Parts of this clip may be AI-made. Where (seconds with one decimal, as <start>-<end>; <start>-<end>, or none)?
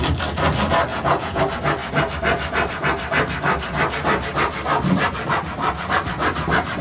0.9-1.4